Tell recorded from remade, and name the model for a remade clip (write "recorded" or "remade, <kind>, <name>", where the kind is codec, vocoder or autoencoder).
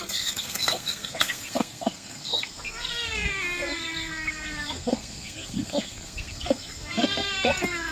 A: remade, codec, SNAC